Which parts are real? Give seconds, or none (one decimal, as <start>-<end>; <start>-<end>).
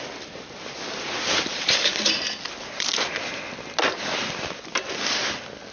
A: 0.0-5.7